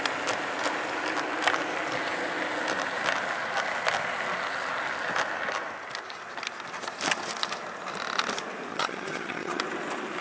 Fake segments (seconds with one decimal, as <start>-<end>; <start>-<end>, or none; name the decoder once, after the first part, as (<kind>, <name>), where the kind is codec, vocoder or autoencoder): 8.7-9.6 (vocoder, HiFi-GAN)